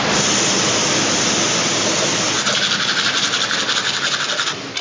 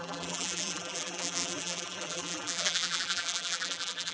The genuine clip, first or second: first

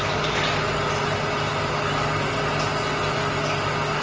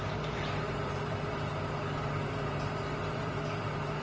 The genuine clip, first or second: first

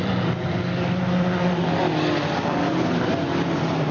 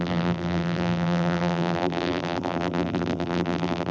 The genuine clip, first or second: first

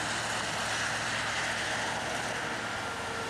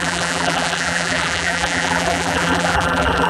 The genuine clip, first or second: first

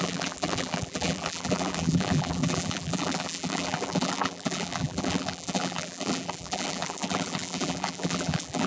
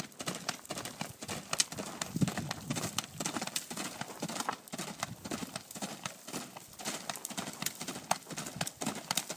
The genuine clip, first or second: second